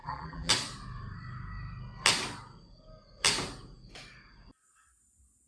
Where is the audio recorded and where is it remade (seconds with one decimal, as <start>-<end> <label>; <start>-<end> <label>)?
0.0-0.5 remade; 0.5-5.5 recorded